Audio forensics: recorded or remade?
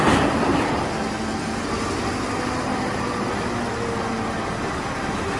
recorded